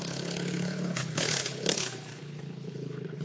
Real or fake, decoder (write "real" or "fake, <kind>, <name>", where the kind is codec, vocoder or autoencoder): fake, codec, HILCodec